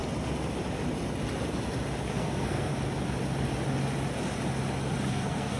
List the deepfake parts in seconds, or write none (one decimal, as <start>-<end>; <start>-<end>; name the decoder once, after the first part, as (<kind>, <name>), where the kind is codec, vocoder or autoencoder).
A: 2.1-2.7 (codec, SNAC); 5.1-5.6

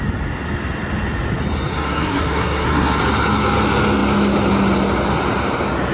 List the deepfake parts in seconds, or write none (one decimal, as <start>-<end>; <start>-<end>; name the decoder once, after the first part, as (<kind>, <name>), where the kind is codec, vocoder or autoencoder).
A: 1.7-3.0 (codec, SNAC)

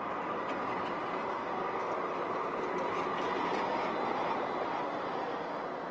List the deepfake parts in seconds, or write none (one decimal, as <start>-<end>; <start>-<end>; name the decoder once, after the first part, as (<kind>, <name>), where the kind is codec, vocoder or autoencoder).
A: 1.3-1.9 (codec, SNAC)

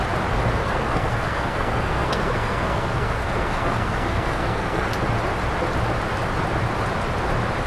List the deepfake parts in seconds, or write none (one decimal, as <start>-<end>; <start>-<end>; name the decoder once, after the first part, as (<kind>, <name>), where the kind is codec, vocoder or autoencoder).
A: 0.6-4.9 (codec, SNAC)

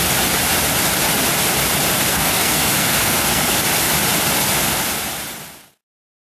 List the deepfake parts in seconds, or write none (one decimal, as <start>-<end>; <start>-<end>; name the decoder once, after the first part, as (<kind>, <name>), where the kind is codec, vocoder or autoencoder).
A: 2.1-3.6 (codec, SNAC)

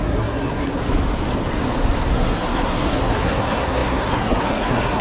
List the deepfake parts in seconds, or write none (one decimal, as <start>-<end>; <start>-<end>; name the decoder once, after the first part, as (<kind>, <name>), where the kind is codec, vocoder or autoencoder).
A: 0.0-0.8 (codec, SNAC); 2.1-5.0

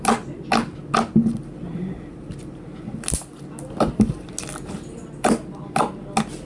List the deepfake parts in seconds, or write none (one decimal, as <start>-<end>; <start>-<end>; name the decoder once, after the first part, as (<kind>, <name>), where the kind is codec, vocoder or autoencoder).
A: none

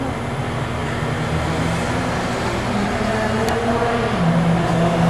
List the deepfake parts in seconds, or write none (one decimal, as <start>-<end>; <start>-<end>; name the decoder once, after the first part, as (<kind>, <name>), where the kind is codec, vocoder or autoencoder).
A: none